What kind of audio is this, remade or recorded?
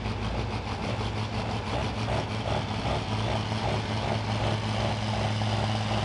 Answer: recorded